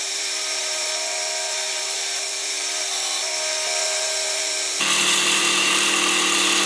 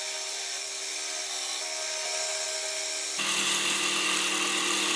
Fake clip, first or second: first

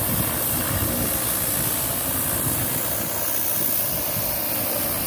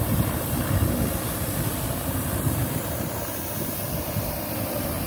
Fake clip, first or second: second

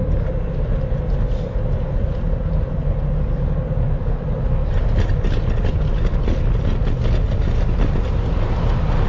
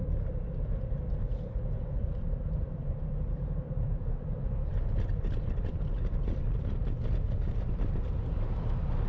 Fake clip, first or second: second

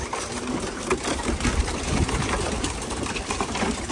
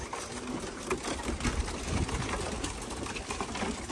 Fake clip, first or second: first